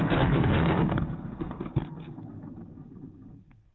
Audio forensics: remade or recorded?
remade